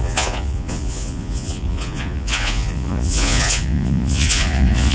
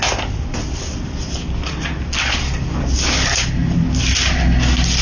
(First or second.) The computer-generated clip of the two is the first